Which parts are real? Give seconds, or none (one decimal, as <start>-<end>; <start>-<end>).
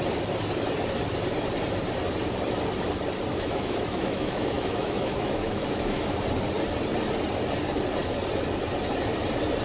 0.0-3.3; 6.0-9.6